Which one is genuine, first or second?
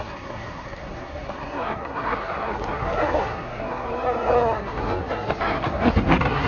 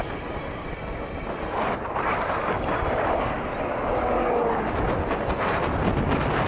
second